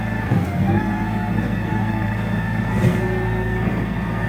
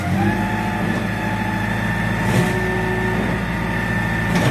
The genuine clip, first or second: second